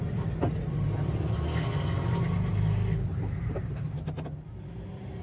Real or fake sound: real